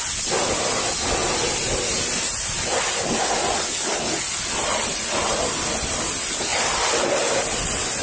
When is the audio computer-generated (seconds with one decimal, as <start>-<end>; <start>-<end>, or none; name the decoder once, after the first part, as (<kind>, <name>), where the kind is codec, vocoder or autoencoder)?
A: none